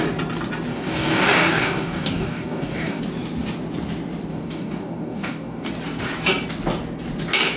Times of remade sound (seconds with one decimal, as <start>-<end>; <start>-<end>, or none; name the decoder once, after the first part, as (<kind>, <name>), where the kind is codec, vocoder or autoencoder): 0.7-3.0 (codec, DAC); 4.3-5.7